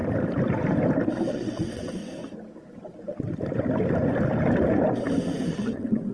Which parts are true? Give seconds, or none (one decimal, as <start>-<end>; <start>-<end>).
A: 0.0-1.3; 2.0-5.5